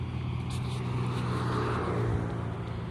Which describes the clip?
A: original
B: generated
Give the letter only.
A